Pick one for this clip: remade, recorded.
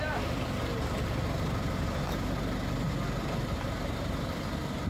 recorded